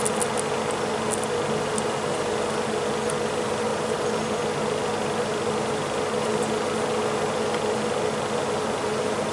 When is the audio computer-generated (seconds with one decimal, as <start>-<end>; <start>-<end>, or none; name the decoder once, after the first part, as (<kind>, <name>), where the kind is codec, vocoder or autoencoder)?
3.7-4.3 (vocoder, BigVGAN v2)